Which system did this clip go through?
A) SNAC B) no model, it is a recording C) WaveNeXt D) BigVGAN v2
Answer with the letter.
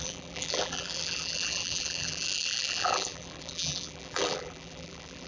D